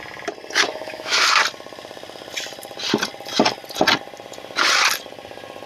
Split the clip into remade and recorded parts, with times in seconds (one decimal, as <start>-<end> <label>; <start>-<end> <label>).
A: 0.0-0.7 recorded; 0.7-1.2 remade; 1.2-5.7 recorded